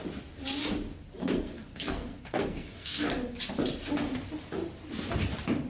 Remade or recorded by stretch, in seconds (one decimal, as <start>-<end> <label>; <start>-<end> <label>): 0.0-1.2 recorded; 1.2-3.1 remade; 3.1-5.7 recorded